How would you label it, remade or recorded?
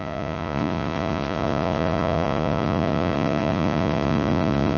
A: remade